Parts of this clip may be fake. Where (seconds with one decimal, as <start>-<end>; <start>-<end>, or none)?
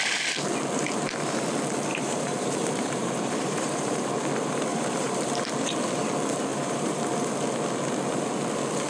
1.9-4.1; 4.7-5.3; 6.5-7.0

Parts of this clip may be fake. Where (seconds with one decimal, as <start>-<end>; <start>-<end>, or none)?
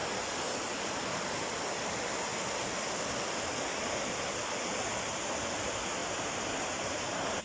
6.0-7.4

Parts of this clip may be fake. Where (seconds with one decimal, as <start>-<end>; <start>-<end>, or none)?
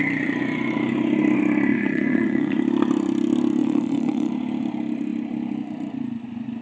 1.7-2.6; 3.6-4.3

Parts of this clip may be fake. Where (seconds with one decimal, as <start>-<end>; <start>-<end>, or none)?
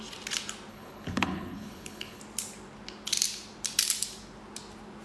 0.7-2.2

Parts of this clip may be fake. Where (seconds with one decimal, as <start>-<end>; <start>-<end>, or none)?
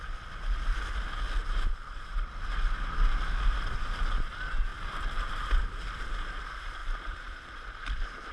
1.4-2.4; 4.7-5.6; 6.8-8.3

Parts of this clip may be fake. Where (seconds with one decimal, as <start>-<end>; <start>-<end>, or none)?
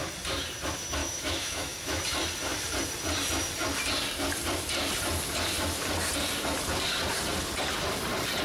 1.0-2.0